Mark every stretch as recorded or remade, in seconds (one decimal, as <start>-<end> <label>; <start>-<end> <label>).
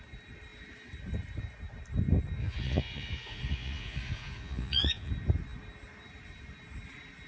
0.0-2.4 recorded; 2.4-5.1 remade; 5.1-7.3 recorded